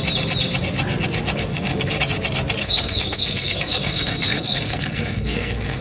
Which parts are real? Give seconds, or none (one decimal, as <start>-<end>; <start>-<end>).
0.0-1.5; 2.0-2.6